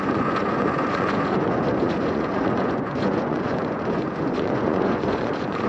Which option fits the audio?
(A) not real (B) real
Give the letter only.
A